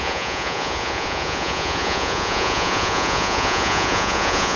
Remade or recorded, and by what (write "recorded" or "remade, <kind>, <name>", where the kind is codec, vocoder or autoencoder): remade, vocoder, Vocos